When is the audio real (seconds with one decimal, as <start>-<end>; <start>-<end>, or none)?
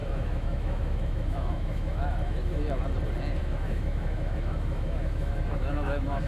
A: 2.8-3.4